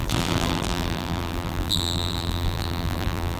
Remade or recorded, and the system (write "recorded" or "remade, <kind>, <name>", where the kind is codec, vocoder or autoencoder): remade, vocoder, BigVGAN v2